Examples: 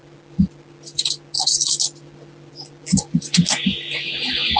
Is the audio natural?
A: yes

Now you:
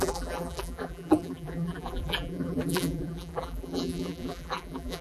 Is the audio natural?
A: no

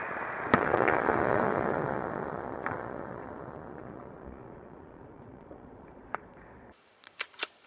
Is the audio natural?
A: no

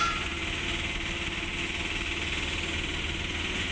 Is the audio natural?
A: yes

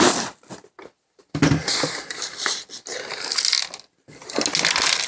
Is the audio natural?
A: yes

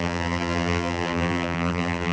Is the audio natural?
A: no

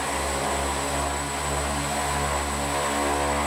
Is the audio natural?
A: yes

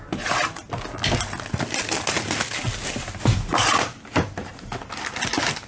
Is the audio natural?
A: yes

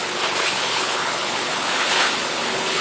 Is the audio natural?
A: no